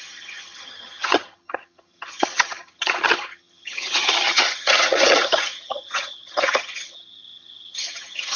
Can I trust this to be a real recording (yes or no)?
no